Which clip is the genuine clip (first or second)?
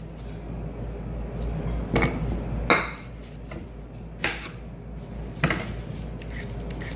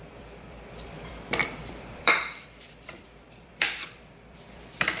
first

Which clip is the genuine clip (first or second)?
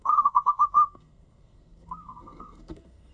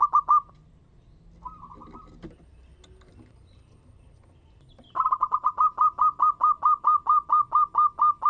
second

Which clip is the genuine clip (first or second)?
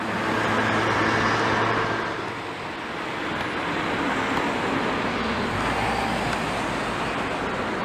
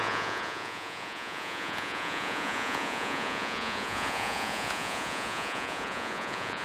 first